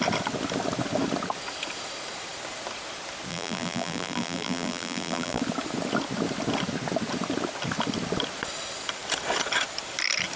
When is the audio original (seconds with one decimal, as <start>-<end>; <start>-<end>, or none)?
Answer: 0.0-3.3; 5.4-10.4